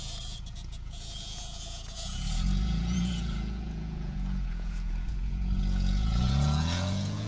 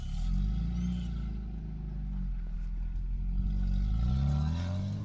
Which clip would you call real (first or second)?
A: second